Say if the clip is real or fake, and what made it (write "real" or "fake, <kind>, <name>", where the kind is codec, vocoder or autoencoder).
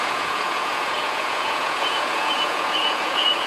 fake, vocoder, Vocos